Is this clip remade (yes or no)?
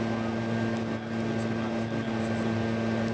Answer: no